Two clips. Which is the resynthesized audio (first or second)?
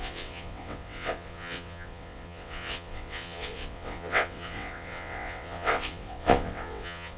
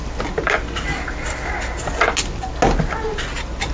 first